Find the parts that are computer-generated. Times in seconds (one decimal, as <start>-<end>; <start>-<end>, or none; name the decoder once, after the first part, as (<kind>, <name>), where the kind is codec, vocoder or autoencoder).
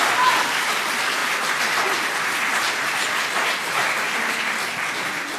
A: none